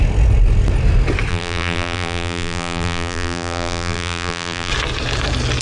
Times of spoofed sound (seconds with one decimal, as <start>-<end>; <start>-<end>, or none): 1.3-4.7